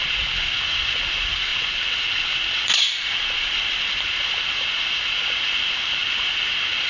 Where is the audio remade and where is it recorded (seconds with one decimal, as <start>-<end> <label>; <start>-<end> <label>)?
0.0-6.9 recorded